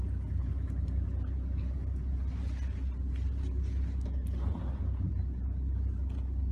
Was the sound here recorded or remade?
recorded